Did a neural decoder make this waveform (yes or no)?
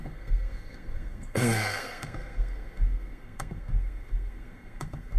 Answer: yes